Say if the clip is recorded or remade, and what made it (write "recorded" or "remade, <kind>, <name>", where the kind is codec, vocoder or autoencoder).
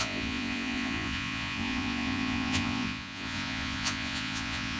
remade, vocoder, Vocos